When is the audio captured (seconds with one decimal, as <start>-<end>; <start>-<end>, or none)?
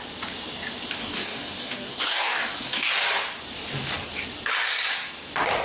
0.0-1.0; 2.9-5.6